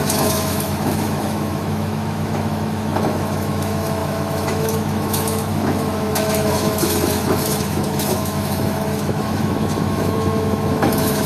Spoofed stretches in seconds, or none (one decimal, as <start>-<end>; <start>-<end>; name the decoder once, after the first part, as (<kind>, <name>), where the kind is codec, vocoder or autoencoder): 0.0-11.3 (autoencoder, DAC-VAE)